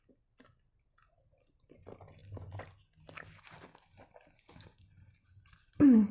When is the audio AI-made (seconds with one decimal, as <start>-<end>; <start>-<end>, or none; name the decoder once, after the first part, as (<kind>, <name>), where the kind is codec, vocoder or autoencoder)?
none